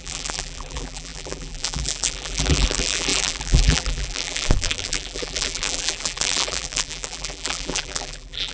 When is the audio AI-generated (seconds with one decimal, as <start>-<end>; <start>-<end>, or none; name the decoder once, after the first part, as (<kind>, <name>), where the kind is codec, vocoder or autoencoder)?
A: 0.0-8.5 (vocoder, BigVGAN v2)